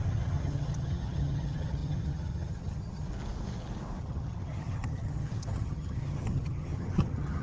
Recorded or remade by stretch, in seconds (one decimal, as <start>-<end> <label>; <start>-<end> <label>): 0.0-3.1 remade; 3.1-4.0 recorded; 4.0-7.4 remade

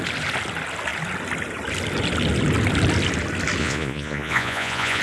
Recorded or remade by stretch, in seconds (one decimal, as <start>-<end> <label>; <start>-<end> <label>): 0.0-3.6 recorded; 3.6-5.0 remade

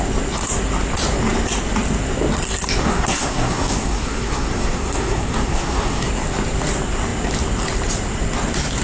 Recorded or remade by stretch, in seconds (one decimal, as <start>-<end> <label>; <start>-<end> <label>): 0.0-2.8 recorded; 2.8-6.1 remade; 6.1-8.8 recorded